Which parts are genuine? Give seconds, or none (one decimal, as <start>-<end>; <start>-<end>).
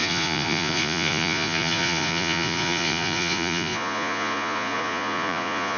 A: none